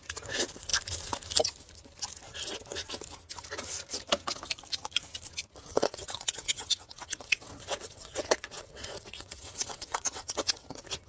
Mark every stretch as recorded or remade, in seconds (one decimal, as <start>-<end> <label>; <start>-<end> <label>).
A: 0.0-5.7 recorded; 5.7-10.7 remade; 10.7-11.1 recorded